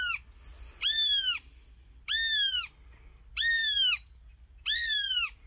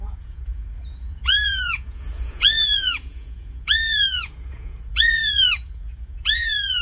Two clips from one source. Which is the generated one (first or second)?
second